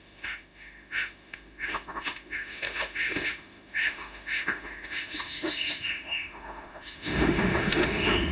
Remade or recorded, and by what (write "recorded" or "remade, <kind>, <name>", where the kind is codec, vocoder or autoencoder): remade, autoencoder, DAC-VAE